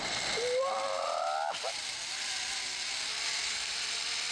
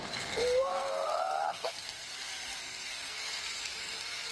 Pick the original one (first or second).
first